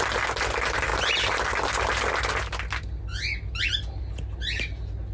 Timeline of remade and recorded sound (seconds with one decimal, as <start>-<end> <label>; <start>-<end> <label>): 0.0-5.1 recorded